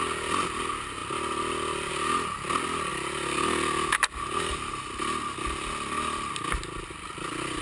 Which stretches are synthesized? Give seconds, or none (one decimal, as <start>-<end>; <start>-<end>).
none